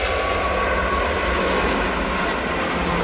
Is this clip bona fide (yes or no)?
yes